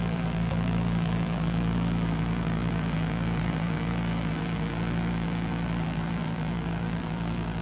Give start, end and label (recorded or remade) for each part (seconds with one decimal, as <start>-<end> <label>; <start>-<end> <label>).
0.0-7.6 remade